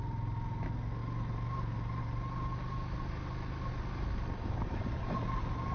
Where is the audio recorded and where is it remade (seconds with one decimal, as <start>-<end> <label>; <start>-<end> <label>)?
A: 0.0-5.7 recorded